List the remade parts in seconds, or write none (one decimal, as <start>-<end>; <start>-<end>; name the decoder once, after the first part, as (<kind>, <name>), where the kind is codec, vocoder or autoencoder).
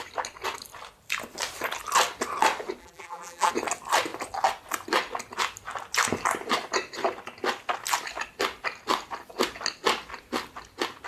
2.8-3.5 (vocoder, BigVGAN v2)